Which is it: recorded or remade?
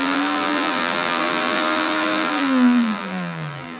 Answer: remade